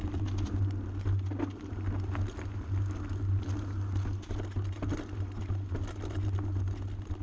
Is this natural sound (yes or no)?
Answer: yes